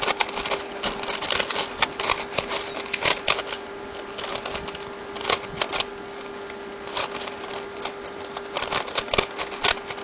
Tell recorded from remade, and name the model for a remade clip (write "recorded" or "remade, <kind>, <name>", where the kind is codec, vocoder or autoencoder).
recorded